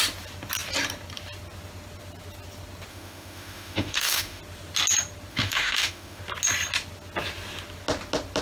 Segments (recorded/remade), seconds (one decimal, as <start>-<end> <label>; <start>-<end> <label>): 0.0-2.9 recorded; 2.9-4.4 remade; 4.4-5.3 recorded; 5.3-6.2 remade; 6.2-8.4 recorded